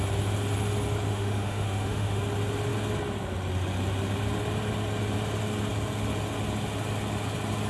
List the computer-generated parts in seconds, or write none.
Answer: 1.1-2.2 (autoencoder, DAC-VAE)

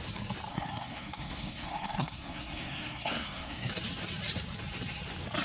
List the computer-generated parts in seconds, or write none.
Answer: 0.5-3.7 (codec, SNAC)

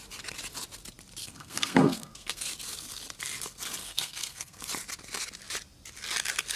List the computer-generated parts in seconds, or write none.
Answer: 1.2-2.5 (codec, SNAC); 3.8-4.6